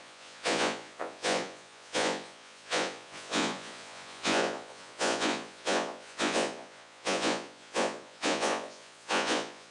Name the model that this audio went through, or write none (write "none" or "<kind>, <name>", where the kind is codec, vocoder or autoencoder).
vocoder, Vocos